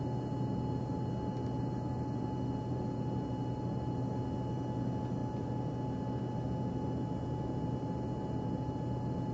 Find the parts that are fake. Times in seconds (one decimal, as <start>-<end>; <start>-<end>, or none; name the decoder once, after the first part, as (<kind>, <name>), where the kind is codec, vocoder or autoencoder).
none